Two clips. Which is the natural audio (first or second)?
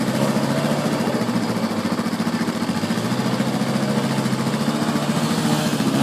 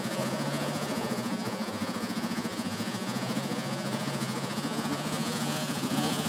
first